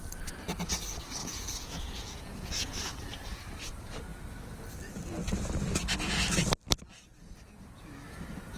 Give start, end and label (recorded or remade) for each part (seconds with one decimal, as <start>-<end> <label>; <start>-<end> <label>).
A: 0.0-1.2 recorded; 1.2-3.4 remade; 3.4-8.6 recorded